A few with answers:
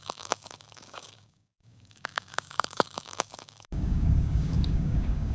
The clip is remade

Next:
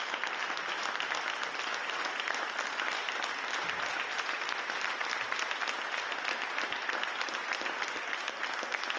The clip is recorded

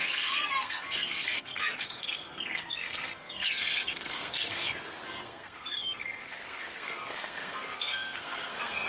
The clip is remade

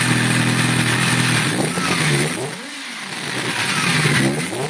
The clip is recorded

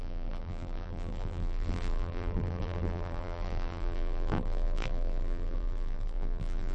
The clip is remade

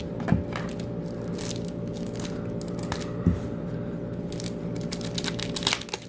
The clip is recorded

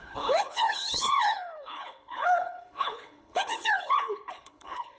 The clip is remade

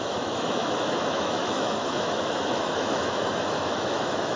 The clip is remade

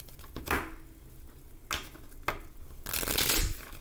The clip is recorded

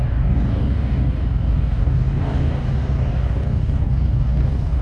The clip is remade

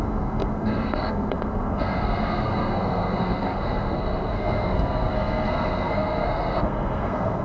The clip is remade